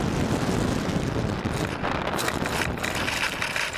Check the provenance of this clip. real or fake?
real